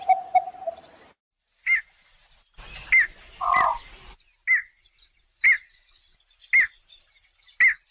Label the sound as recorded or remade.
recorded